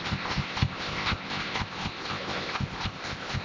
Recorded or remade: remade